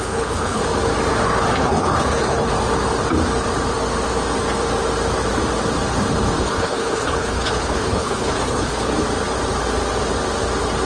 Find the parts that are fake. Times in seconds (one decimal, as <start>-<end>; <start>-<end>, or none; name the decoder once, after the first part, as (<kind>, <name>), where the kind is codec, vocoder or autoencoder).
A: 0.0-0.6 (codec, HILCodec); 1.6-2.5; 6.4-8.9